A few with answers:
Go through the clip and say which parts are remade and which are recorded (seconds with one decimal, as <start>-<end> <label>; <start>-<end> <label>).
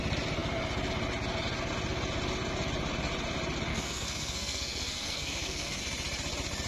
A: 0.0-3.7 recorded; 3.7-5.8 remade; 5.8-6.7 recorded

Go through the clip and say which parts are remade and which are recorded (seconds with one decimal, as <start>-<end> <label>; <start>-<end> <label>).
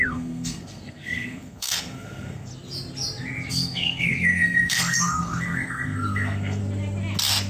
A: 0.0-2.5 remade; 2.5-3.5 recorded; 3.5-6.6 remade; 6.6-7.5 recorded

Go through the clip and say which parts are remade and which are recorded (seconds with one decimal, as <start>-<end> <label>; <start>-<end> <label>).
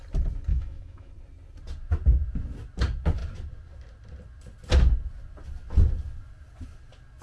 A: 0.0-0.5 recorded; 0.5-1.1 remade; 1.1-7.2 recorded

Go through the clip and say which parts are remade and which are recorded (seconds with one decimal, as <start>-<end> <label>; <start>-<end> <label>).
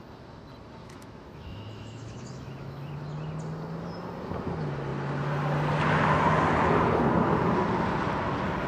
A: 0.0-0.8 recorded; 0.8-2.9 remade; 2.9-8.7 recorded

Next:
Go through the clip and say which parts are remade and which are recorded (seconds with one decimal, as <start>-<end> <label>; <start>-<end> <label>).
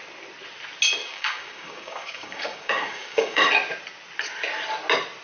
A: 0.0-1.0 recorded; 1.0-3.4 remade; 3.4-5.2 recorded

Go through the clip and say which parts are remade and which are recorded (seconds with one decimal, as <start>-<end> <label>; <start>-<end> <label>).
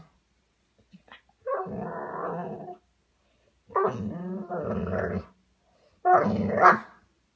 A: 0.0-7.4 recorded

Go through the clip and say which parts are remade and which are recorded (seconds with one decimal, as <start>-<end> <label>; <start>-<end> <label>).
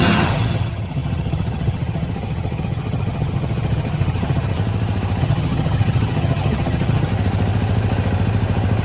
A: 0.0-4.6 remade; 4.6-5.2 recorded; 5.2-7.1 remade; 7.1-8.8 recorded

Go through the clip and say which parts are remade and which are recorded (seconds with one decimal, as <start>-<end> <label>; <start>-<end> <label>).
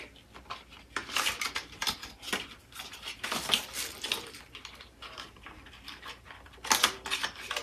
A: 0.0-7.6 recorded